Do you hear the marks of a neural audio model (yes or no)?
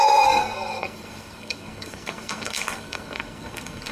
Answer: yes